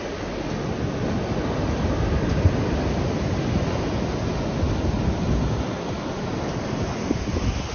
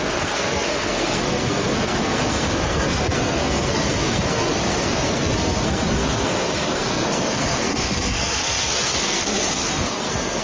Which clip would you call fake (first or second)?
second